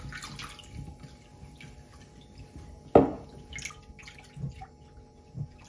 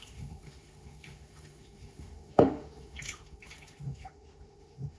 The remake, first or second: second